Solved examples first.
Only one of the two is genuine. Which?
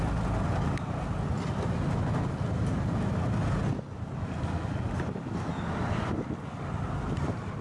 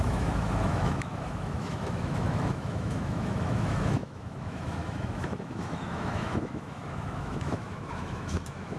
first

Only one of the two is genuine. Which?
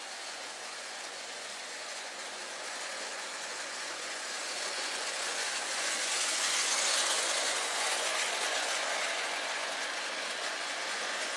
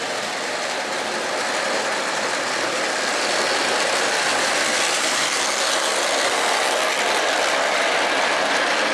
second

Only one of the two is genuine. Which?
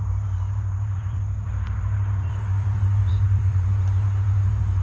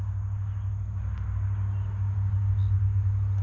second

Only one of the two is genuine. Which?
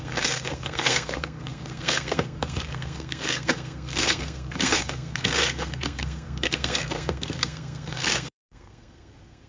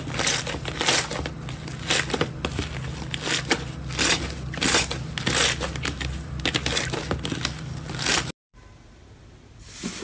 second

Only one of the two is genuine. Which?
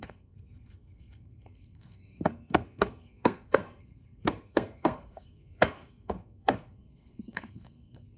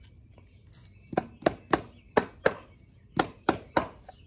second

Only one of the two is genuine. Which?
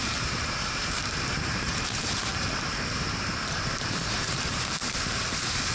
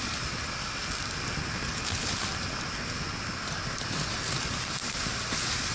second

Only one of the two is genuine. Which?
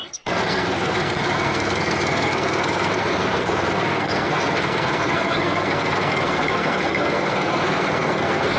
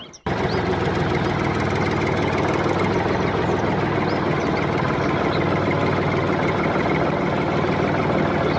second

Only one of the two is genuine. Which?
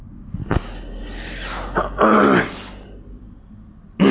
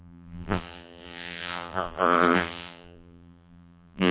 first